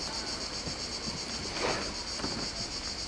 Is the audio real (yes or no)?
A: yes